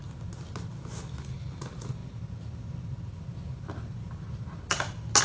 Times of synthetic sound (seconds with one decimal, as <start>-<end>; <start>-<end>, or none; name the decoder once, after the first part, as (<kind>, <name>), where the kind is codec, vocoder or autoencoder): none